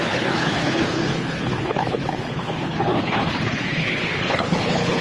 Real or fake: fake